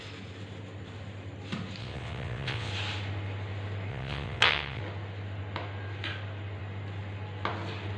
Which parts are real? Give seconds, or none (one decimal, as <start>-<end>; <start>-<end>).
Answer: 0.0-1.8; 2.7-3.9; 4.8-8.0